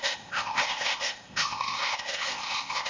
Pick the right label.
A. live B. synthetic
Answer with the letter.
B